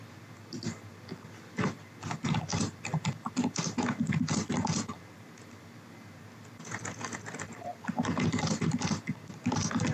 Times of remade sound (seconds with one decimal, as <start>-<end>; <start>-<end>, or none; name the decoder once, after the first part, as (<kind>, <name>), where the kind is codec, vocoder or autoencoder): none